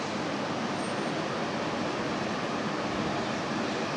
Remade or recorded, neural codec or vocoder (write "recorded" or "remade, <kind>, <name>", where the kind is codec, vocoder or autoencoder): recorded